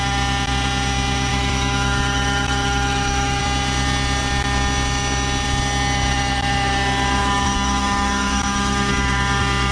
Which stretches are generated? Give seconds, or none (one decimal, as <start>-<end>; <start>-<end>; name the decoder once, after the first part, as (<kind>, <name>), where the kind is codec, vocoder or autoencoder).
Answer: 1.3-3.4 (autoencoder, DAC-VAE); 7.2-8.9